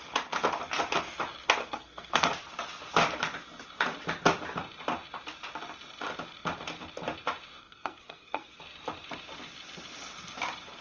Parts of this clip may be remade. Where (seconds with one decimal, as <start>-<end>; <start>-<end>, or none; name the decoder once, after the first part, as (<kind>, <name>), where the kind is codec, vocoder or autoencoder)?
1.6-2.3 (codec, SNAC); 7.6-8.6